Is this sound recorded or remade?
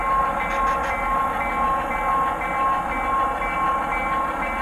recorded